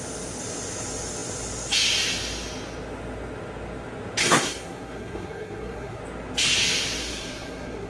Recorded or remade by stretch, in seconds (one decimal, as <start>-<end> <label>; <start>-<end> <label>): 0.0-4.2 recorded; 4.2-6.0 remade; 6.0-7.0 recorded; 7.0-7.9 remade